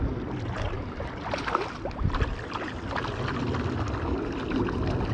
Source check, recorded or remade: recorded